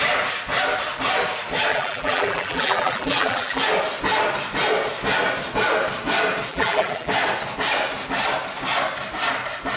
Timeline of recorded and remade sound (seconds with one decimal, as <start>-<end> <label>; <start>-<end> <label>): 0.0-1.7 recorded; 1.7-3.6 remade; 3.6-6.5 recorded; 6.5-7.1 remade; 7.1-9.8 recorded